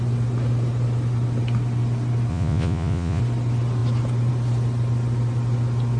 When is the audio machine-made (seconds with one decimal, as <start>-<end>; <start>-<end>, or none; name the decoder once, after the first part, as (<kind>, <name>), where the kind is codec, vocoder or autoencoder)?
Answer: 2.3-3.2 (vocoder, Vocos)